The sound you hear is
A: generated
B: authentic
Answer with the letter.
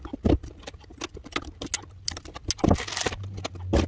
B